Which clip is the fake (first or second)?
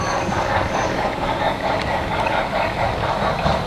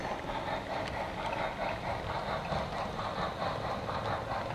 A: first